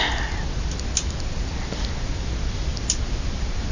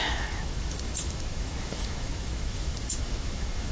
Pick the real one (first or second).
first